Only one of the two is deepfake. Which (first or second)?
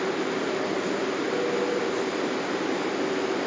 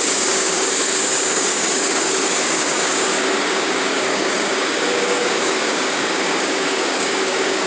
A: second